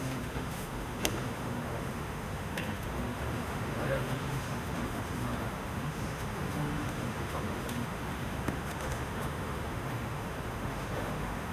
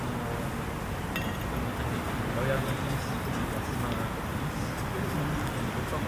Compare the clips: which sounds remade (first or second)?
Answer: first